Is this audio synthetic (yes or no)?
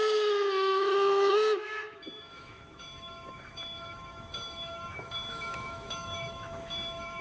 yes